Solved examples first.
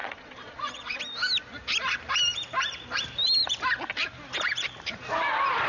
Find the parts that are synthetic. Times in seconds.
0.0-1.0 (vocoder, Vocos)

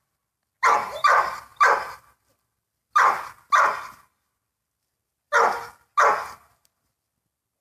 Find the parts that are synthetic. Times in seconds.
none

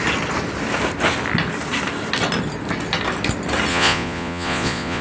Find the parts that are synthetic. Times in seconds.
3.7-5.0 (vocoder, Vocos)

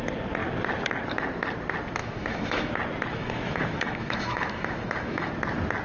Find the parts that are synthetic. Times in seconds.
2.0-2.7 (autoencoder, DAC-VAE); 3.1-5.3

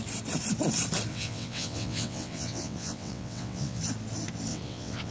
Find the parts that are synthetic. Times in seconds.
1.1-3.8 (vocoder, WaveNeXt); 4.5-5.1

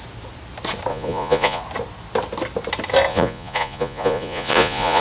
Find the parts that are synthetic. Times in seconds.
0.9-1.6 (vocoder, Vocos); 3.1-5.0

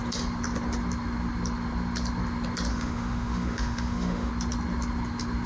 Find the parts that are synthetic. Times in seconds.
2.7-4.3 (autoencoder, DAC-VAE)

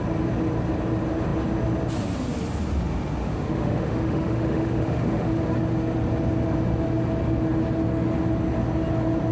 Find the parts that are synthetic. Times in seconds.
3.2-5.4 (autoencoder, DAC-VAE)